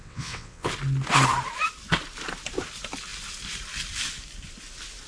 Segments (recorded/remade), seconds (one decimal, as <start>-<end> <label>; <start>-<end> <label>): 0.0-0.7 remade; 0.7-5.1 recorded